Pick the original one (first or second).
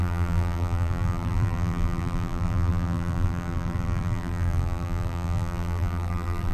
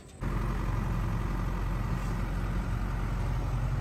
second